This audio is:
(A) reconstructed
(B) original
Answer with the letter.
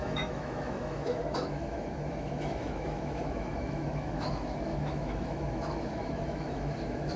A